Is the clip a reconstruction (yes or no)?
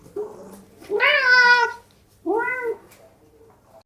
no